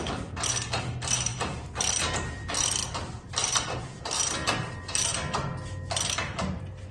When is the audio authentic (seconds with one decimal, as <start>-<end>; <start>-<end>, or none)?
0.0-6.9